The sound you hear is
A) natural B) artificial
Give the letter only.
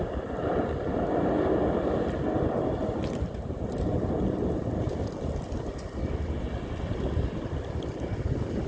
A